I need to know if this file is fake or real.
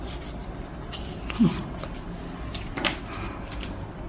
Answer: real